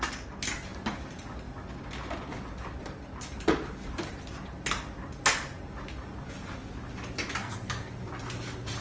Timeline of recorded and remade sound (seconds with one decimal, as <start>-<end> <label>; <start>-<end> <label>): 0.0-7.4 recorded; 7.4-7.9 remade; 7.9-8.8 recorded